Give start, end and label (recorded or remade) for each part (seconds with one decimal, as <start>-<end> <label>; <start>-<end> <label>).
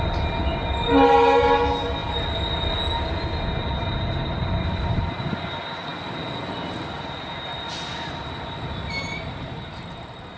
0.0-10.4 recorded